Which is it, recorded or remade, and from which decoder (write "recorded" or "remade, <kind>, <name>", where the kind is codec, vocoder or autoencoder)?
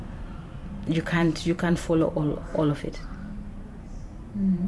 remade, vocoder, BigVGAN v2